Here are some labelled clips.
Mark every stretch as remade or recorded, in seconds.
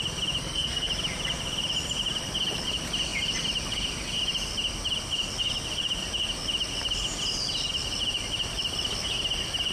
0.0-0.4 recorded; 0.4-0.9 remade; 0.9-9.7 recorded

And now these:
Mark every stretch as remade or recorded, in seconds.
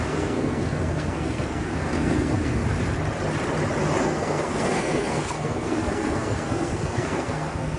0.0-2.6 remade; 2.6-4.0 recorded; 4.0-7.8 remade